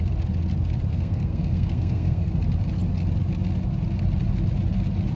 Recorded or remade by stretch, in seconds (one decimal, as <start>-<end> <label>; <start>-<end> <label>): 0.0-0.9 recorded; 0.9-2.3 remade; 2.3-5.2 recorded